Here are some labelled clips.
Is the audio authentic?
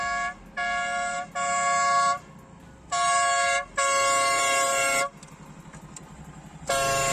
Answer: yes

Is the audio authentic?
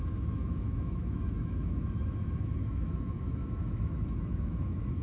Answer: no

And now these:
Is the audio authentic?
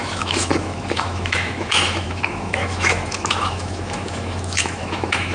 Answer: no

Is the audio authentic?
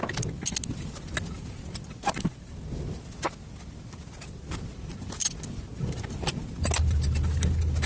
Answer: yes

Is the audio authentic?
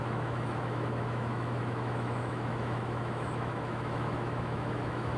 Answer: no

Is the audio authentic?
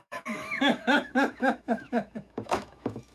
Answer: no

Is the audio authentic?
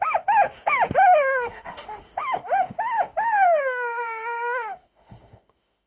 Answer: no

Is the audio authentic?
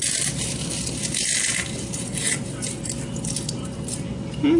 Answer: yes